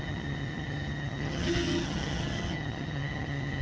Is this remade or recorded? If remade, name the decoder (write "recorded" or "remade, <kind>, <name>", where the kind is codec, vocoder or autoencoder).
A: remade, vocoder, HiFi-GAN